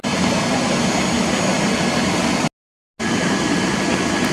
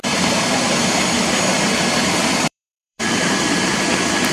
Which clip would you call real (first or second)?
first